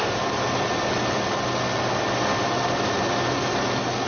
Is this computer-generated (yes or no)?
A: no